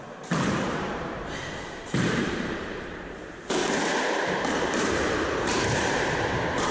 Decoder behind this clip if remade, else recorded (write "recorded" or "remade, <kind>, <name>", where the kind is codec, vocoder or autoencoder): remade, vocoder, BigVGAN v2